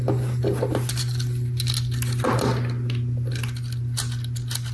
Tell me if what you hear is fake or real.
real